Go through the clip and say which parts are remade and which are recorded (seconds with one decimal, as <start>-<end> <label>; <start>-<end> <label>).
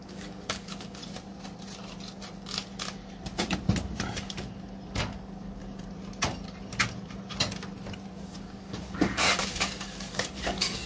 0.0-1.0 remade; 1.0-4.9 recorded; 4.9-5.6 remade; 5.6-8.1 recorded; 8.1-10.9 remade